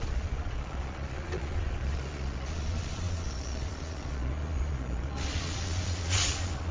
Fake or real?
fake